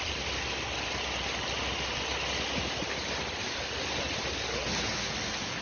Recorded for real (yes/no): yes